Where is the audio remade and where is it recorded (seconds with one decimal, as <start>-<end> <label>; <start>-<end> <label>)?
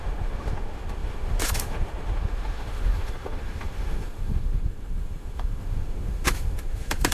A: 0.0-7.1 remade